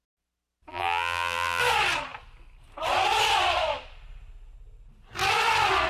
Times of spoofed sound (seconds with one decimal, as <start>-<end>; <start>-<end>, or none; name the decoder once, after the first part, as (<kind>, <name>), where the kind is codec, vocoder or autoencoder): 0.7-1.6 (vocoder, BigVGAN v2)